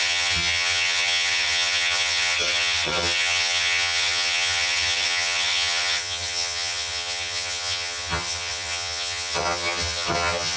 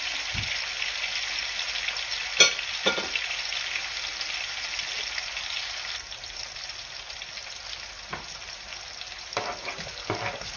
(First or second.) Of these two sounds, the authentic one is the second